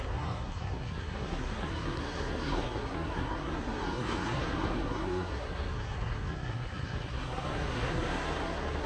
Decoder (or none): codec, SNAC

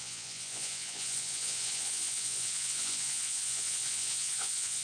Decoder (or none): vocoder, Vocos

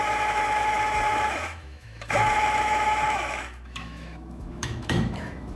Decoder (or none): autoencoder, DAC-VAE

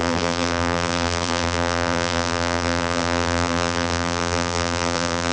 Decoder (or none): vocoder, BigVGAN v2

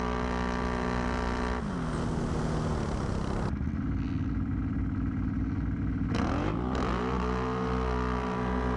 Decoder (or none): none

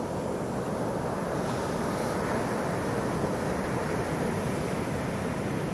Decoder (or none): none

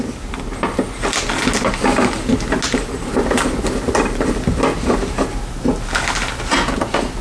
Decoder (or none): none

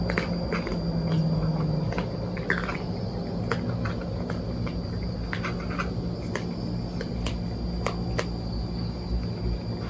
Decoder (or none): none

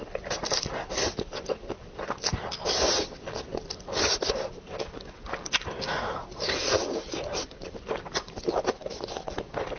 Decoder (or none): none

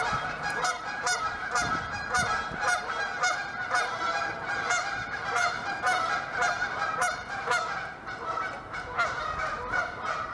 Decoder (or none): vocoder, BigVGAN v2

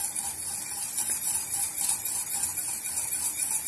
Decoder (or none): none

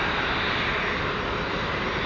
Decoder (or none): none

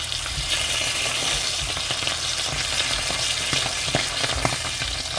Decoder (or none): none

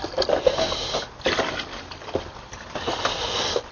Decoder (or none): none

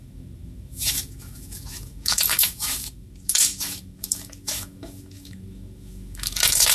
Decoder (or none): autoencoder, DAC-VAE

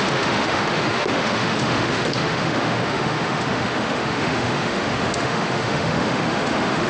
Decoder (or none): autoencoder, DAC-VAE